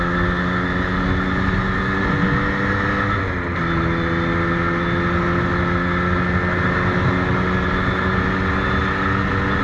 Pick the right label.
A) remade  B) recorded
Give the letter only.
B